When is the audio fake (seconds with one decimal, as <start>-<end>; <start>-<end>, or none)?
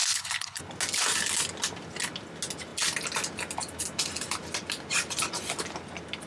0.0-0.6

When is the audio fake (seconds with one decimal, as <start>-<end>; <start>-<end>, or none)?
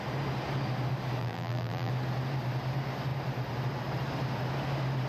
1.2-1.9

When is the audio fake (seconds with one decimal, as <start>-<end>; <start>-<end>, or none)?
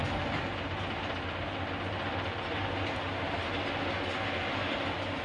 3.1-3.5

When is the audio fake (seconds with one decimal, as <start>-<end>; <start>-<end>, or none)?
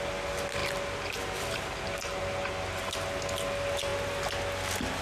none